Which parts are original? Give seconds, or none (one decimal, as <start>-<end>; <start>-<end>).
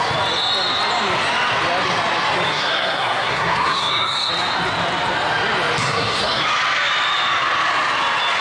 0.0-2.5; 4.3-5.8; 6.4-8.4